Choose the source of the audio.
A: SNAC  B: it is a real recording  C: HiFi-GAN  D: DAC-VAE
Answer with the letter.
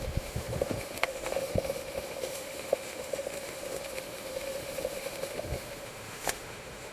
D